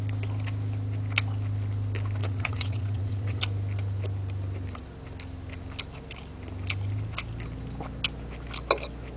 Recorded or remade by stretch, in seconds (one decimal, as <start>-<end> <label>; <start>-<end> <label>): 0.0-2.2 recorded; 2.2-3.4 remade; 3.4-9.2 recorded